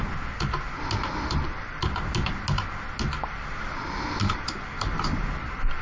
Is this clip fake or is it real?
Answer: real